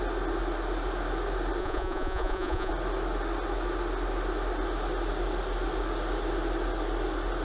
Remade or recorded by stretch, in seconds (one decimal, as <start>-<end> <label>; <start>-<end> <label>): 0.0-1.6 recorded; 1.6-2.7 remade; 2.7-7.4 recorded